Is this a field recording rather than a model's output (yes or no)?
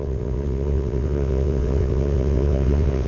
no